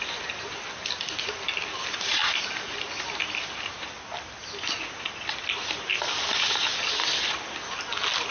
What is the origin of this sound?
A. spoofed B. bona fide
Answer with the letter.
B